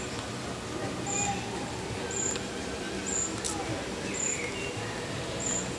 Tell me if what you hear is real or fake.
real